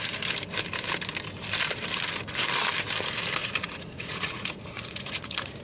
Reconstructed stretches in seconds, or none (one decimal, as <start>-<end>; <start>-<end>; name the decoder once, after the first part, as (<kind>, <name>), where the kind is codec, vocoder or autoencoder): 3.4-5.6 (vocoder, Vocos)